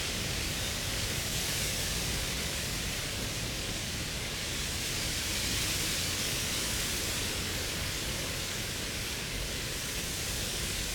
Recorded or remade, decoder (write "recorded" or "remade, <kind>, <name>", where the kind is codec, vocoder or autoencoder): remade, codec, DAC